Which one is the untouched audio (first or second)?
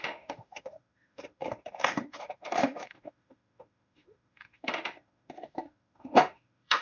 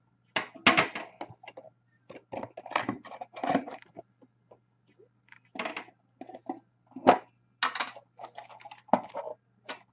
second